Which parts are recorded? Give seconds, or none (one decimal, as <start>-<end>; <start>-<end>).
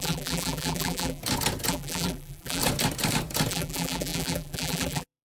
1.2-1.7; 2.6-3.5